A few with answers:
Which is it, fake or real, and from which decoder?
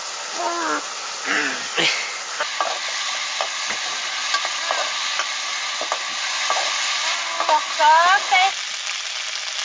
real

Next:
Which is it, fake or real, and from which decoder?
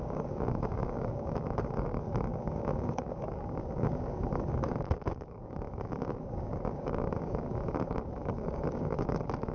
fake, codec, DAC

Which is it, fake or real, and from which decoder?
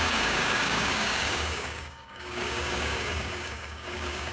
fake, codec, DAC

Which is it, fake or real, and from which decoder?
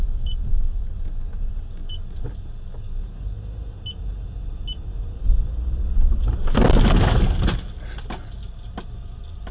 real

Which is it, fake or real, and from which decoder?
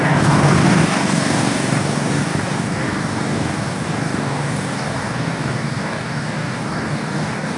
fake, codec, DAC